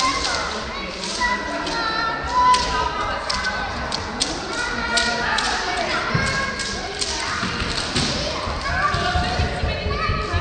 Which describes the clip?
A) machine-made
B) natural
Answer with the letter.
B